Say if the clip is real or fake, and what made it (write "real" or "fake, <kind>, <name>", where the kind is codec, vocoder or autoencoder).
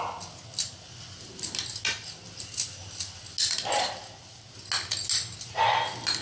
real